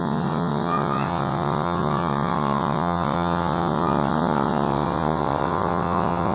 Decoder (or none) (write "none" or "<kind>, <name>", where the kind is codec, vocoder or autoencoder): vocoder, WaveNeXt